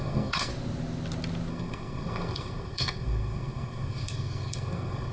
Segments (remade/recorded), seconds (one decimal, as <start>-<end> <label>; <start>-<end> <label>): 0.0-0.5 remade; 0.5-1.5 recorded; 1.5-5.1 remade